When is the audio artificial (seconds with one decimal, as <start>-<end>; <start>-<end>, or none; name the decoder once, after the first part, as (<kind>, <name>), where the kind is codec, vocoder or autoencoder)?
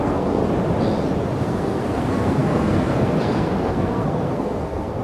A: 0.0-0.4 (codec, SNAC); 1.4-5.0